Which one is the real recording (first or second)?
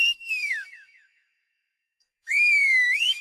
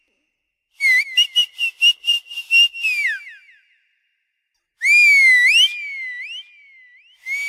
second